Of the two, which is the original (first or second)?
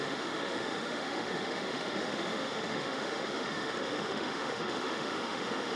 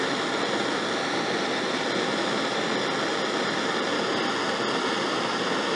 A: second